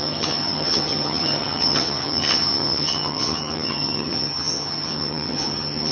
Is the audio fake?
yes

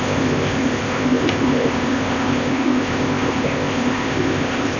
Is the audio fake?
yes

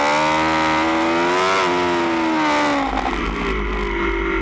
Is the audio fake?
no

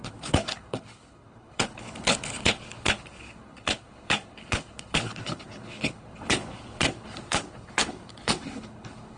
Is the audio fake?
yes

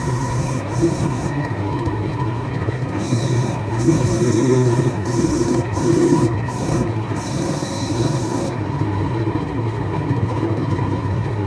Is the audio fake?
yes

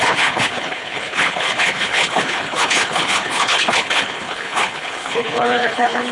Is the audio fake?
yes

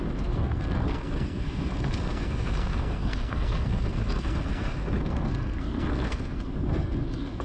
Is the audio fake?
yes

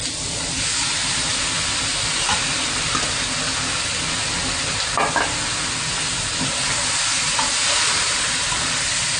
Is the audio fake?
no